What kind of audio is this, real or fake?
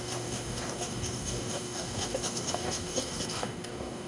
fake